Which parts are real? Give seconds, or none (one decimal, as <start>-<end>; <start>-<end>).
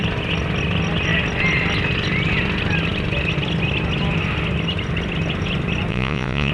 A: 0.0-5.9